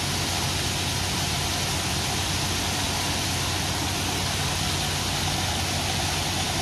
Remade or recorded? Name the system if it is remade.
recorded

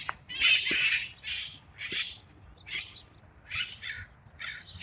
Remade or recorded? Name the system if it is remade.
recorded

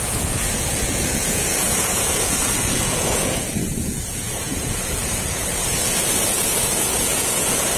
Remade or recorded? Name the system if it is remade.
remade, vocoder, Vocos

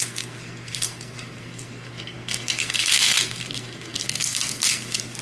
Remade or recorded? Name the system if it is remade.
remade, codec, SNAC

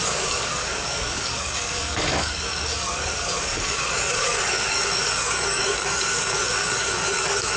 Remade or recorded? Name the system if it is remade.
remade, codec, DAC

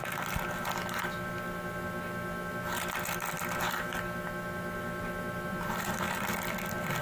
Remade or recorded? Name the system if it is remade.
recorded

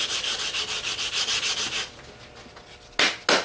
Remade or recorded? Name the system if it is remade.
recorded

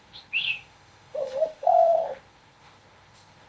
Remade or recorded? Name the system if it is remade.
remade, autoencoder, DAC-VAE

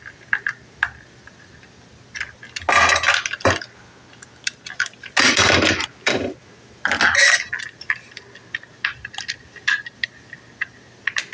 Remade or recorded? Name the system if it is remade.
recorded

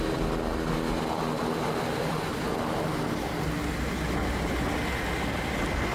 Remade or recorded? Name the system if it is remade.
recorded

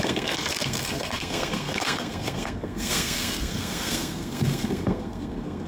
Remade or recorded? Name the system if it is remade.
remade, codec, SNAC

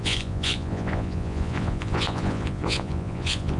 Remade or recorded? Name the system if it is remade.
remade, vocoder, Vocos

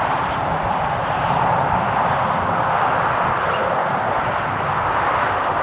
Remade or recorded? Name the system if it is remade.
recorded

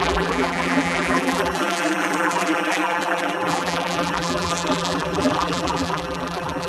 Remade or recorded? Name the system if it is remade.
remade, vocoder, BigVGAN v2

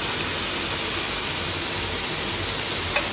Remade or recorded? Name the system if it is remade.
recorded